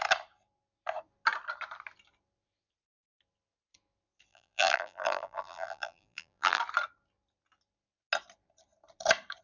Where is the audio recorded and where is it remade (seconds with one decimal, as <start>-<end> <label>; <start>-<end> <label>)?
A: 0.0-4.3 recorded; 4.3-6.6 remade; 6.6-9.4 recorded